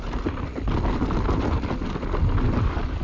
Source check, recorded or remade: recorded